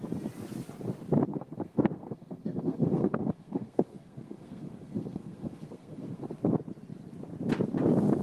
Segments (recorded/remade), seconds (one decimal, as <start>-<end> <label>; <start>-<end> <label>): 0.0-1.3 recorded; 1.3-6.2 remade; 6.2-8.2 recorded